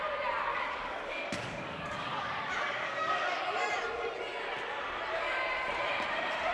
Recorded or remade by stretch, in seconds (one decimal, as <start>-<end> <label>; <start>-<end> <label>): 0.0-0.5 recorded; 0.5-3.7 remade; 3.7-6.5 recorded